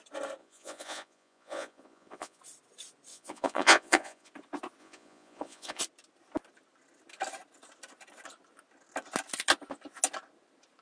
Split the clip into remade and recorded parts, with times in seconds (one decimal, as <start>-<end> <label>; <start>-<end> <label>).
0.0-0.4 recorded; 0.4-2.4 remade; 2.4-3.1 recorded; 3.1-4.3 remade; 4.3-4.8 recorded; 4.8-5.8 remade; 5.8-10.8 recorded

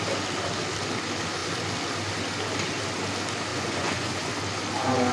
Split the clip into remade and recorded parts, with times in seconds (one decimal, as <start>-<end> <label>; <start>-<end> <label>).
0.0-3.5 recorded; 3.5-4.3 remade; 4.3-5.1 recorded

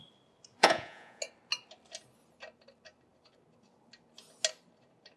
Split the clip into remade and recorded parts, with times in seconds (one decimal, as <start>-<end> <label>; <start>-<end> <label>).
0.0-0.6 recorded; 0.6-1.2 remade; 1.2-5.2 recorded

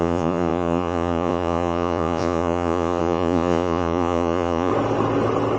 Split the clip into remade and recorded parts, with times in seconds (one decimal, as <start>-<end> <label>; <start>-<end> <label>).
0.0-4.7 remade; 4.7-5.6 recorded

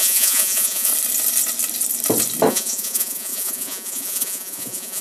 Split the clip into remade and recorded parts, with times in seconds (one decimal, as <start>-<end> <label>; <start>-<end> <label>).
0.0-0.9 remade; 0.9-2.5 recorded; 2.5-5.0 remade

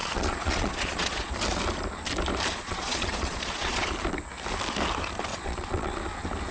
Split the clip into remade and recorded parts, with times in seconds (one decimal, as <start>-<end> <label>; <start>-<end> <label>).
0.0-1.3 remade; 1.3-2.5 recorded; 2.5-3.9 remade; 3.9-5.3 recorded; 5.3-6.0 remade; 6.0-6.5 recorded

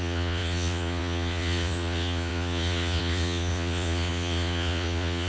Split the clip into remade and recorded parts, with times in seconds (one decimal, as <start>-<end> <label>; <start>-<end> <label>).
0.0-5.3 remade